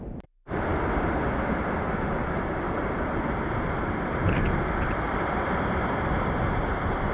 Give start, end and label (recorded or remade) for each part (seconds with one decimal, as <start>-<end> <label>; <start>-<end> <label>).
0.0-7.1 recorded